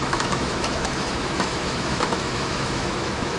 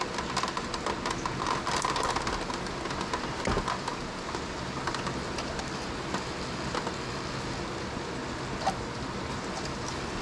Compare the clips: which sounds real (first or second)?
second